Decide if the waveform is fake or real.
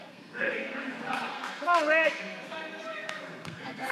fake